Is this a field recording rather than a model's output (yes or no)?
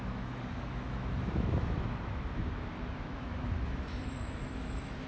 no